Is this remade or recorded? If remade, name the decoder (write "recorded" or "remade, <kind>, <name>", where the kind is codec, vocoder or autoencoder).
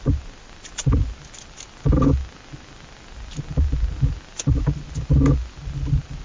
recorded